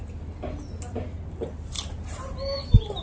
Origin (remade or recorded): recorded